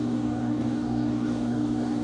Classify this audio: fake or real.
fake